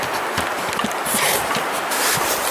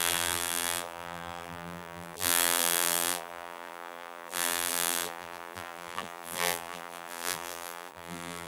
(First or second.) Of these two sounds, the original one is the first